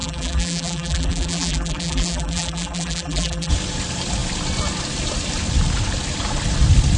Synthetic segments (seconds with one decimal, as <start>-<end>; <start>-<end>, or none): 0.0-3.5